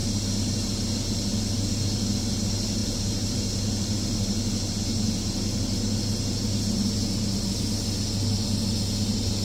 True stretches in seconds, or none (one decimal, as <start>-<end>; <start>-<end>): 0.0-2.8; 3.3-9.4